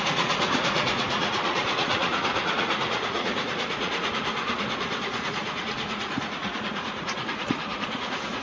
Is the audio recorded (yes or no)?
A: no